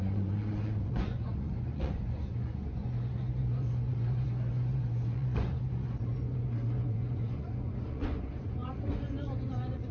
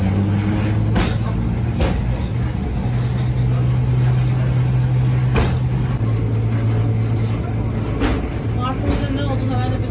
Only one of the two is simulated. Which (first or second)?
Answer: first